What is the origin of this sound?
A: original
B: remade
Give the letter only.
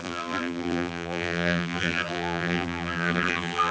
B